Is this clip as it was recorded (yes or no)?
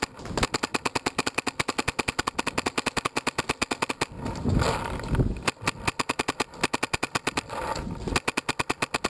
yes